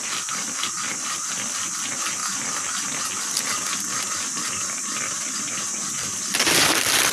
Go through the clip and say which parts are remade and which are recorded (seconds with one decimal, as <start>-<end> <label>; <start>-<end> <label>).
0.0-2.2 remade; 2.2-5.9 recorded; 5.9-7.1 remade